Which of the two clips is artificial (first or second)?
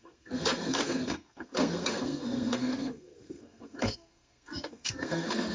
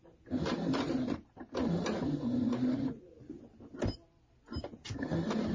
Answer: first